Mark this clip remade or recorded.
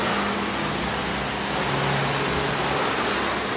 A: recorded